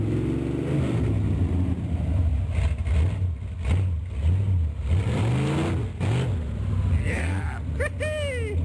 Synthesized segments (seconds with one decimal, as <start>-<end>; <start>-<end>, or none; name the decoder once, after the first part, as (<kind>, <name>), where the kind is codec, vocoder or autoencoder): 7.0-7.6 (codec, SNAC)